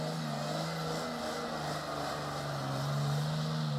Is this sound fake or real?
real